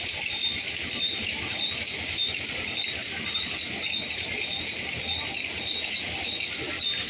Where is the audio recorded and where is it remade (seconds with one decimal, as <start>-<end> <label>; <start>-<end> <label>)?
0.0-3.8 remade; 3.8-5.7 recorded; 5.7-7.1 remade